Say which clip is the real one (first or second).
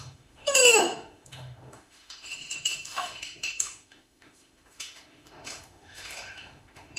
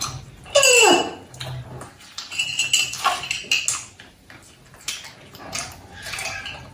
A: second